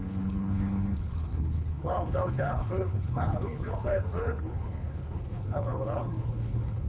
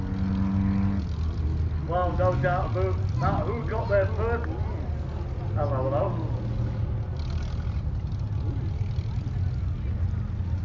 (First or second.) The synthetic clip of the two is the first